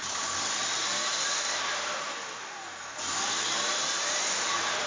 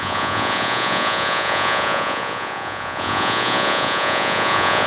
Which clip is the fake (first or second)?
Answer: second